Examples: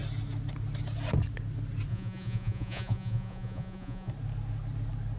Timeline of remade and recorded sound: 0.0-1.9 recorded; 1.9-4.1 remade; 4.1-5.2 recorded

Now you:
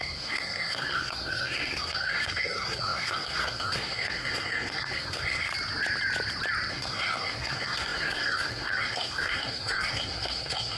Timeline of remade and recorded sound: 0.0-5.5 remade; 5.5-6.7 recorded; 6.7-10.8 remade

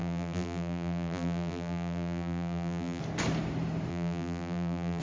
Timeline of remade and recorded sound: 0.0-3.0 remade; 3.0-3.9 recorded; 3.9-5.0 remade

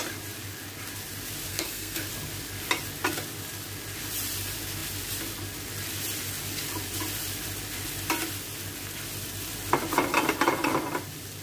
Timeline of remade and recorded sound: 0.0-1.5 recorded; 1.5-2.1 remade; 2.1-11.4 recorded

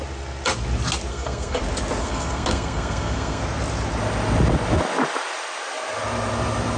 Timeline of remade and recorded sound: 0.0-1.1 recorded; 1.1-1.6 remade; 1.6-2.0 recorded; 2.0-3.4 remade; 3.4-6.8 recorded

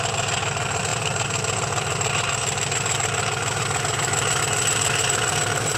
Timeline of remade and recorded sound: 0.0-5.8 remade

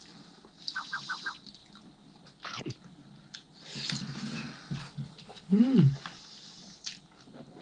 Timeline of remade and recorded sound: 0.0-4.8 recorded; 4.8-5.6 remade; 5.6-7.6 recorded